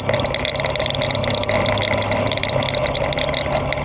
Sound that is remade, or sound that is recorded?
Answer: recorded